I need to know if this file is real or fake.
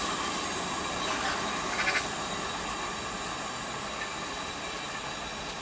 real